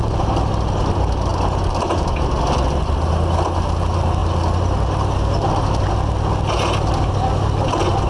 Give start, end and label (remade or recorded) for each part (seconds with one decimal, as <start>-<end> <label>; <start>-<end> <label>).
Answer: 0.0-8.1 recorded